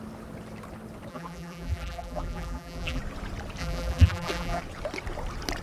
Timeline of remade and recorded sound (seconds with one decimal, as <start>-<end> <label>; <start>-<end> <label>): 0.0-1.1 recorded; 1.1-3.0 remade; 3.0-3.6 recorded; 3.6-4.6 remade; 4.6-5.6 recorded